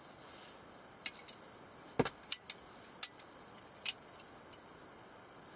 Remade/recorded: recorded